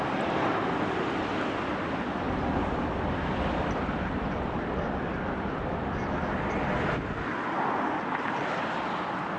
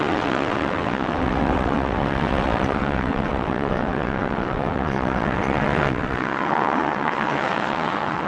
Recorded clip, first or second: first